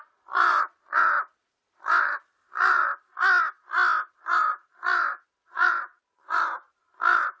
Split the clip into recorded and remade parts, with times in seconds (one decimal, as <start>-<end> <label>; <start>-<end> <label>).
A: 0.0-2.9 remade; 2.9-4.1 recorded; 4.1-7.4 remade